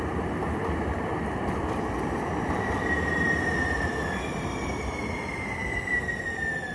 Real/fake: fake